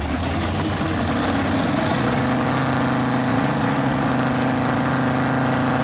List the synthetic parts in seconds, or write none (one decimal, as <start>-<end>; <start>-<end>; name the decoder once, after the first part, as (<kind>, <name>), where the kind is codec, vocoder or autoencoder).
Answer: 1.6-2.2 (vocoder, Vocos); 3.3-4.1